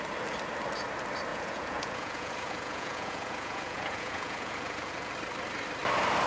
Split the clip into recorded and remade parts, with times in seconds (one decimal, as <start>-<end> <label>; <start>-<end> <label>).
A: 0.0-1.3 recorded; 1.3-5.1 remade; 5.1-6.3 recorded